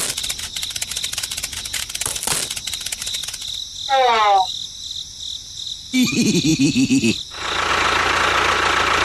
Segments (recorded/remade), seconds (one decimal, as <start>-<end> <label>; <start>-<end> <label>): 0.0-9.0 recorded